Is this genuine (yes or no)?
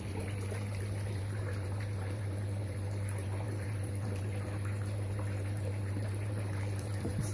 no